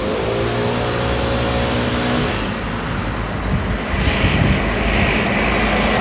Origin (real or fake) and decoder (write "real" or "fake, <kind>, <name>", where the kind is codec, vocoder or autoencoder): real